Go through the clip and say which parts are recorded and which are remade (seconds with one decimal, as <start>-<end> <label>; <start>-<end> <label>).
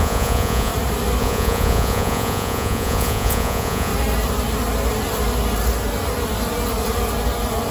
0.0-0.7 remade; 0.7-1.2 recorded; 1.2-3.9 remade; 3.9-7.7 recorded